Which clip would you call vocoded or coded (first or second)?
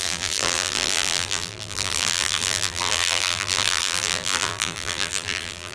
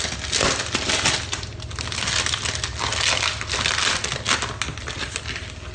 first